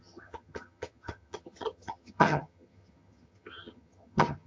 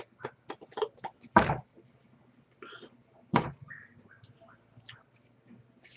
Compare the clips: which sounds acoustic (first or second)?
second